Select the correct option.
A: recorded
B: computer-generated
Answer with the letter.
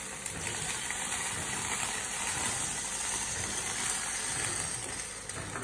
A